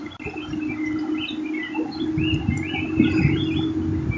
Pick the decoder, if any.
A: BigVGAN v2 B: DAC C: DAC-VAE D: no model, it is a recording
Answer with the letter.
D